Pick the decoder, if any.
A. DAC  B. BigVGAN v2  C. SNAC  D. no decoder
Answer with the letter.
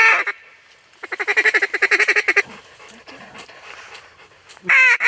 D